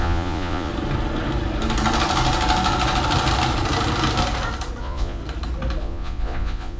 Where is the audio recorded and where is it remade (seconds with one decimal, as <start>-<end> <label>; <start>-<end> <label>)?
0.0-0.7 remade; 0.7-4.8 recorded; 4.8-5.2 remade; 5.2-5.8 recorded; 5.8-6.8 remade